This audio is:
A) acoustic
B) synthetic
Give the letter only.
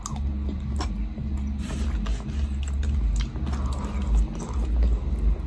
A